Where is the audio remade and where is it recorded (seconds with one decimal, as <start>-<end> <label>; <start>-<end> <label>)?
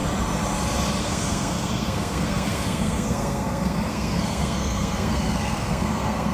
0.0-1.0 recorded; 1.0-6.3 remade